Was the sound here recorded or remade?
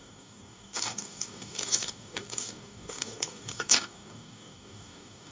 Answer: remade